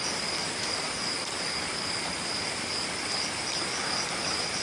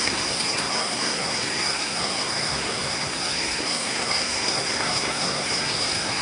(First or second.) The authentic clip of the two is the first